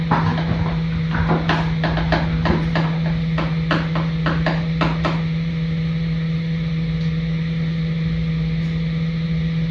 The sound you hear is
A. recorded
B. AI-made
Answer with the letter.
A